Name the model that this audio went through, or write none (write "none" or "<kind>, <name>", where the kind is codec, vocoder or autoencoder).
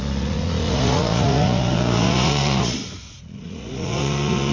vocoder, Vocos